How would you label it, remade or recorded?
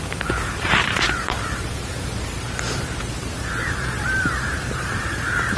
remade